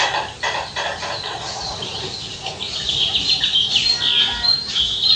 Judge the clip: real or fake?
real